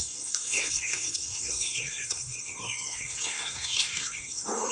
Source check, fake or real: fake